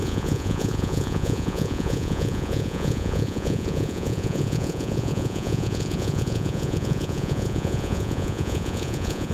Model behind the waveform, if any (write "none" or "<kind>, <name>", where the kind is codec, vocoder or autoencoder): vocoder, Vocos